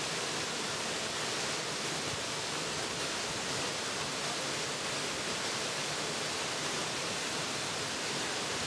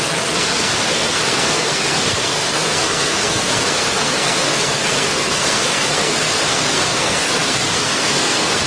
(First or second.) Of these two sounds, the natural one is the first